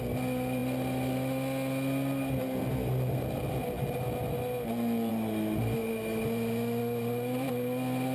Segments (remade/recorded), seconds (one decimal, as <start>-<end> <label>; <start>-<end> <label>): 0.0-8.1 recorded